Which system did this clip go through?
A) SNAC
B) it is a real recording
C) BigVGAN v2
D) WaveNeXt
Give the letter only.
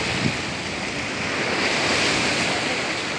B